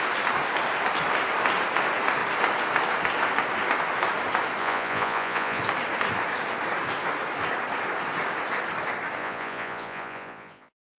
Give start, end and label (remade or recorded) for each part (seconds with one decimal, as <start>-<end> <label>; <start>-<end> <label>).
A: 0.0-4.6 recorded; 4.6-5.6 remade; 5.6-9.2 recorded; 9.2-11.0 remade